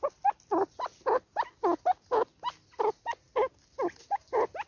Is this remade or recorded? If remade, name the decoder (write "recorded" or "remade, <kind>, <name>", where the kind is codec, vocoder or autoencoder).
recorded